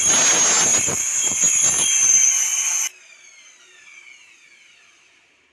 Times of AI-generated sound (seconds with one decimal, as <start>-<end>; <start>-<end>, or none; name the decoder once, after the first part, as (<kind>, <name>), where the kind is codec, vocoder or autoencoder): 0.7-1.6 (vocoder, BigVGAN v2)